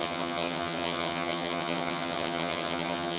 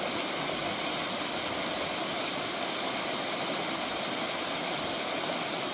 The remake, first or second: first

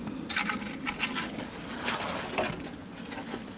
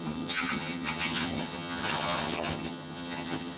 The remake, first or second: second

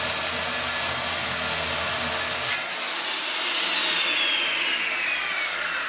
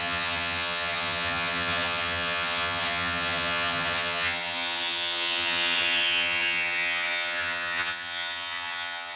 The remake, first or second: second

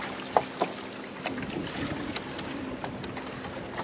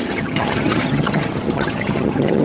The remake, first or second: second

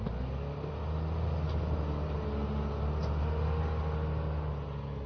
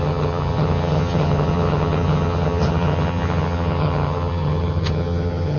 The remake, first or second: second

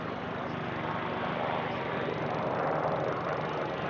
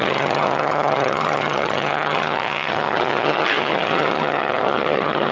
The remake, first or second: second